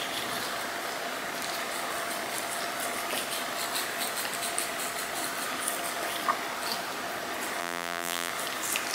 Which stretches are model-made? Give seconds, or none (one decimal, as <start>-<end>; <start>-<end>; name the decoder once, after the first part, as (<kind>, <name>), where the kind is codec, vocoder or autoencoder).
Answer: 7.6-8.3 (vocoder, BigVGAN v2)